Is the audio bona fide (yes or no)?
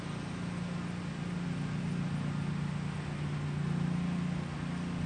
yes